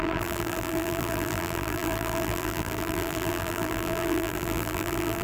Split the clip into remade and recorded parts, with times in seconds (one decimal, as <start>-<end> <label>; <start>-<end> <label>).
0.0-5.2 remade